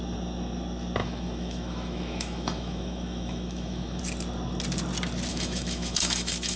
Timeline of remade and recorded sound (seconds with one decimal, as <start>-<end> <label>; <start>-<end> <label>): 0.0-1.0 recorded; 1.0-4.0 remade; 4.0-5.3 recorded; 5.3-6.6 remade